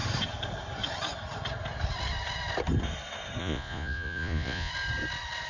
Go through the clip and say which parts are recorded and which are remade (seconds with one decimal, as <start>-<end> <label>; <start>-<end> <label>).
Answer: 0.0-3.4 recorded; 3.4-4.7 remade; 4.7-5.5 recorded